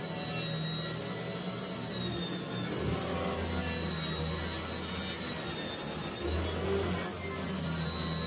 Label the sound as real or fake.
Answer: real